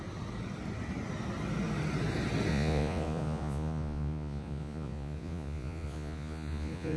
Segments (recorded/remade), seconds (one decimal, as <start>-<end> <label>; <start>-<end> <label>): 0.0-2.5 recorded; 2.5-7.0 remade